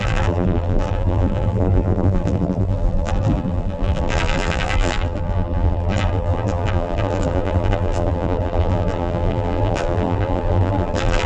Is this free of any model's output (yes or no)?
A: no